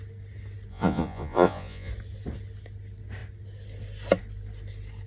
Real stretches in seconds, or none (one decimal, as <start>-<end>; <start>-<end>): 0.0-0.7; 1.9-5.1